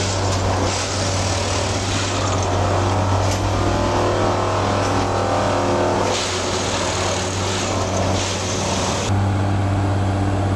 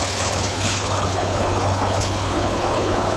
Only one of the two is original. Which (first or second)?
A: first